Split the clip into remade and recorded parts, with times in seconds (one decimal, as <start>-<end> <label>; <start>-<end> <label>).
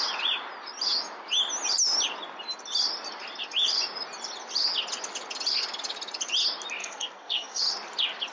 0.0-6.8 recorded; 6.8-7.6 remade; 7.6-8.3 recorded